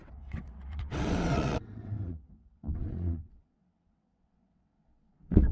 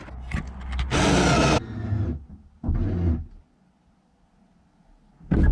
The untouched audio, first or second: second